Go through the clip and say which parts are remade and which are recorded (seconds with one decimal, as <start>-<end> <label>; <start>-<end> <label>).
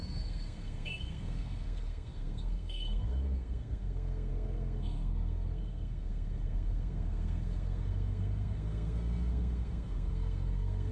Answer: 0.0-10.9 remade